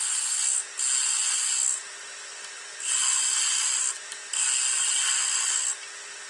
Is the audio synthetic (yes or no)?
no